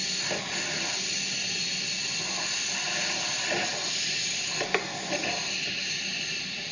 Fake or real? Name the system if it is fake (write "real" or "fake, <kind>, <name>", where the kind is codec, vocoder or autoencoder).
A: real